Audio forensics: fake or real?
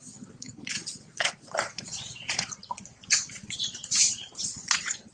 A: fake